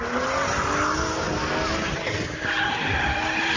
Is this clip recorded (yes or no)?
yes